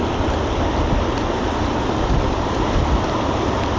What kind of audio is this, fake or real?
real